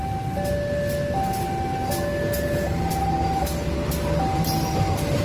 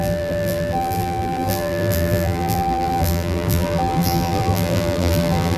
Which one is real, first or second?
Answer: first